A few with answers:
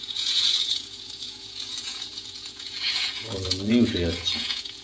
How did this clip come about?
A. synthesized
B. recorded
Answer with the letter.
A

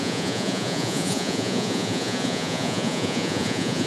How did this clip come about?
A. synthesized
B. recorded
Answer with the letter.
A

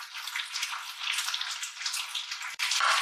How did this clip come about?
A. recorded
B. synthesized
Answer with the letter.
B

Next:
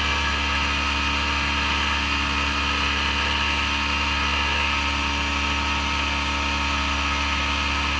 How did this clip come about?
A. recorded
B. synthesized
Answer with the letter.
A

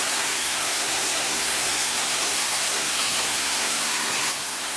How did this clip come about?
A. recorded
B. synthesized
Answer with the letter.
B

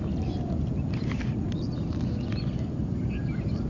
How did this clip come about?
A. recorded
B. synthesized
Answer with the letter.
B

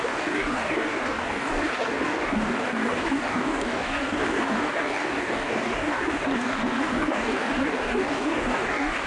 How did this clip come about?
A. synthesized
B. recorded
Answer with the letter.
A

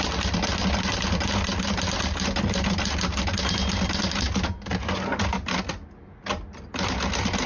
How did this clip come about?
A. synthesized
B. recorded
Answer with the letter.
B